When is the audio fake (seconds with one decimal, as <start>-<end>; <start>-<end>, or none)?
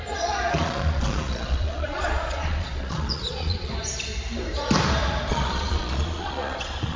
0.0-3.7; 5.3-7.0